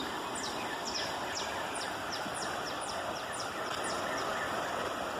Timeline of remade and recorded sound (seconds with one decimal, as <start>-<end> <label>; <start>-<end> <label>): 0.0-0.8 recorded; 0.8-3.9 remade; 3.9-4.3 recorded; 4.3-5.2 remade